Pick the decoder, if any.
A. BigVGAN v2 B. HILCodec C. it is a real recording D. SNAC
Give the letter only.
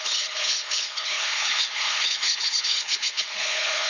B